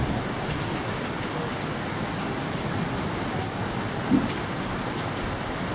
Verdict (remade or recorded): recorded